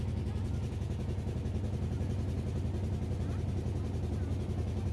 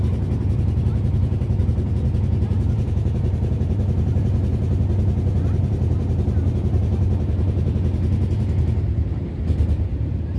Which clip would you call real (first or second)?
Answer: first